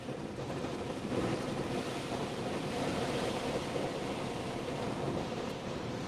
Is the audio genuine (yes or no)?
no